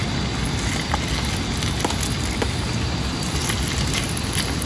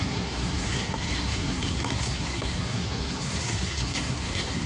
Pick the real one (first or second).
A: first